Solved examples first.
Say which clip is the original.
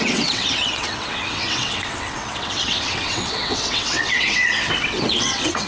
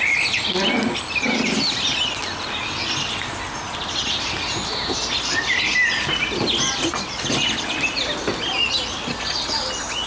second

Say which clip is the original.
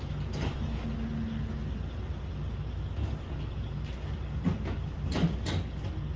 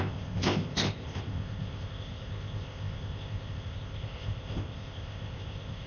first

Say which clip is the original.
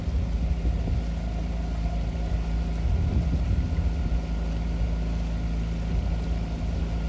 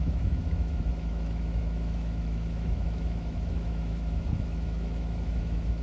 first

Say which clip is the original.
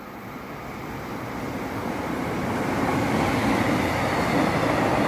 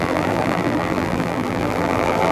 first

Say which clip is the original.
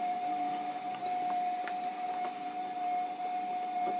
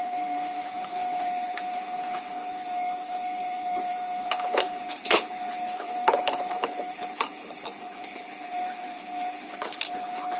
first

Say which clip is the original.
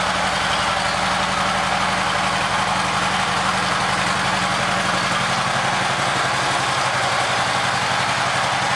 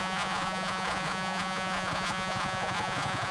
first